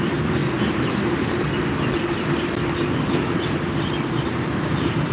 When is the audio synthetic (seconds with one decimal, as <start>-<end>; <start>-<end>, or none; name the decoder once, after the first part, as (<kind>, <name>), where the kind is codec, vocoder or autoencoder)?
none